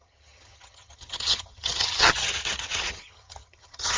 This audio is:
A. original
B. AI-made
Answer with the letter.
B